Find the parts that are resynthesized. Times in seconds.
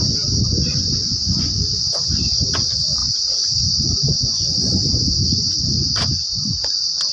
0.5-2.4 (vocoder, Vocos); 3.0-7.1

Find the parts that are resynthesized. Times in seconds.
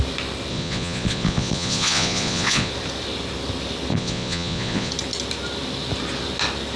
0.5-2.7 (vocoder, Vocos); 3.9-4.9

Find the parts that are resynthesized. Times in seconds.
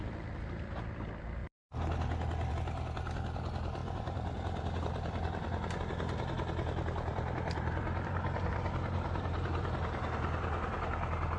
3.8-5.8 (vocoder, BigVGAN v2); 7.1-10.9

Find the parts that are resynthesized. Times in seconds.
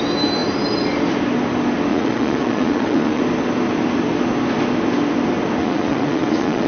1.9-3.2 (vocoder, Vocos); 5.6-6.7